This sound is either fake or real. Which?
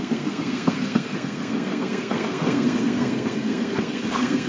fake